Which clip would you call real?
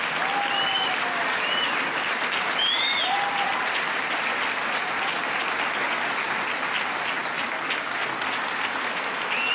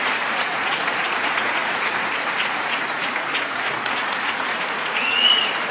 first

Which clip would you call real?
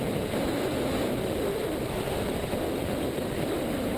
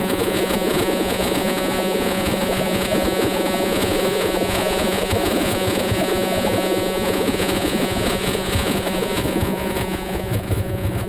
first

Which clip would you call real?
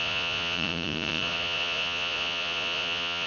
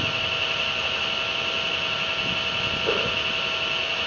second